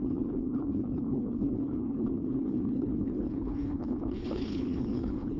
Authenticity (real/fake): fake